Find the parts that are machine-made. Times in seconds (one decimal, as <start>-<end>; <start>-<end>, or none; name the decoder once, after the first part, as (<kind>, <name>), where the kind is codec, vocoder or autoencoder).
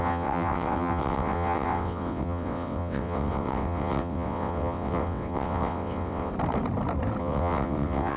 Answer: 0.0-6.3 (vocoder, WaveNeXt); 7.2-8.2